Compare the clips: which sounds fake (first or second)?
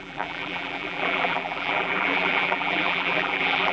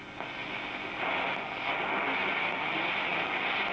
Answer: first